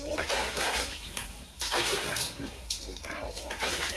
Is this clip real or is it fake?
fake